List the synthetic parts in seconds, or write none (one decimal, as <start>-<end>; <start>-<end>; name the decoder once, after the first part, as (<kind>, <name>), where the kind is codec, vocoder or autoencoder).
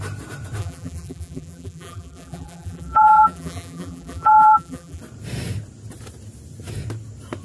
0.6-5.0 (vocoder, BigVGAN v2)